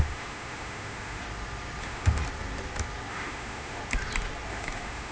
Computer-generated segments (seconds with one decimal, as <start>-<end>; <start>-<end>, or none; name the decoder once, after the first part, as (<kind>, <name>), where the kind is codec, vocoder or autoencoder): 0.0-1.2 (autoencoder, DAC-VAE); 1.8-2.2; 3.1-3.8; 4.5-5.1